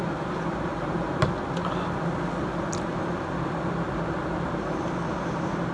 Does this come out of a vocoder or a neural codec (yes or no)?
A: no